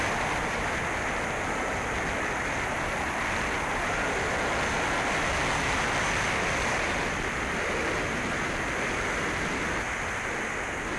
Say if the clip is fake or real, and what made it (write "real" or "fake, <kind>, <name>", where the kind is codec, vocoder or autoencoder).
real